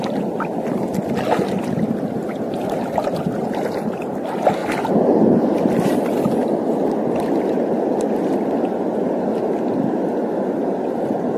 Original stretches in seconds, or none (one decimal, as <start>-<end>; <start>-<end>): 4.6-5.2; 6.4-10.7

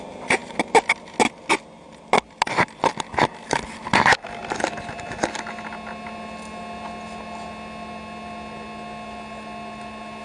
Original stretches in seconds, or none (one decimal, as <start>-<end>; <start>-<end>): 0.0-10.2

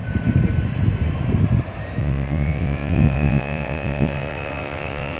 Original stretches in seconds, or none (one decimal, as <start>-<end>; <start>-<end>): 0.0-2.0

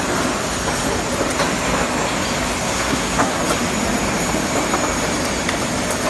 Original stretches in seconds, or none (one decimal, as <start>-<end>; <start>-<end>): 0.0-2.6; 3.4-6.1

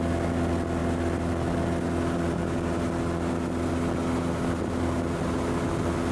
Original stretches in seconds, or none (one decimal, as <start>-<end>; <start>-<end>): 0.0-6.1

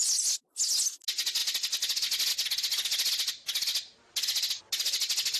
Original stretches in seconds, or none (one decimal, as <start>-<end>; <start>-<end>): 0.0-5.4

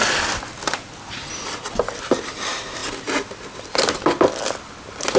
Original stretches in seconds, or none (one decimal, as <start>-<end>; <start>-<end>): 0.0-5.2